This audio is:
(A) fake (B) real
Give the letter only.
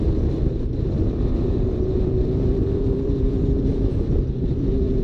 A